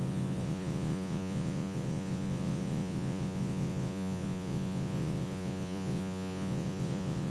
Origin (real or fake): fake